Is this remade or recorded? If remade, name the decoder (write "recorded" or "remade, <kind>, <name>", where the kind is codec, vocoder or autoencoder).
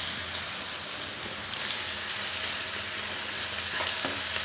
recorded